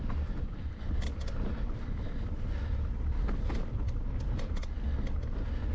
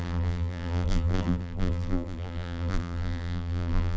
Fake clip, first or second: second